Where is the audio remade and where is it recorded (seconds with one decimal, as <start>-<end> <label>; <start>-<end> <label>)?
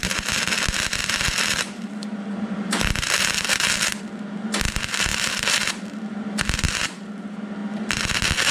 0.0-1.0 recorded; 1.0-4.0 remade; 4.0-5.1 recorded; 5.1-5.7 remade; 5.7-7.6 recorded; 7.6-8.1 remade; 8.1-8.5 recorded